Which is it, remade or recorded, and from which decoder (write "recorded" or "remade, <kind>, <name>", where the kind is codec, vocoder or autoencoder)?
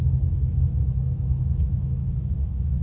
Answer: remade, autoencoder, DAC-VAE